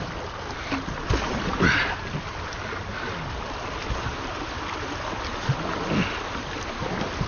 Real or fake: real